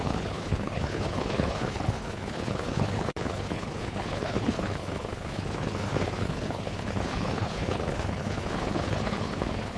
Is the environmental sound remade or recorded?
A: remade